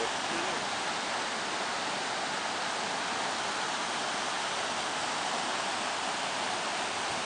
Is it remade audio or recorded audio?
recorded